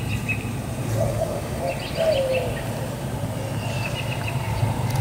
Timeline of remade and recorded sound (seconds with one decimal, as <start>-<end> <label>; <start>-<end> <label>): 0.0-1.1 recorded; 1.1-1.6 remade; 1.6-5.0 recorded